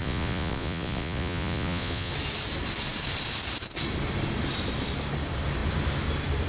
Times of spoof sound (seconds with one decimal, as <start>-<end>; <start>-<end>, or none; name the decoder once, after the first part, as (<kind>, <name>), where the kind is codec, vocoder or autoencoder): 0.0-2.1 (vocoder, Vocos)